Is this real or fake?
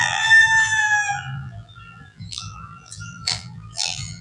fake